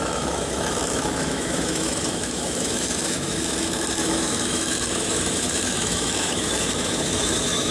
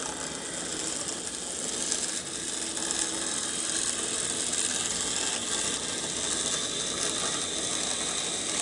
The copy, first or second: first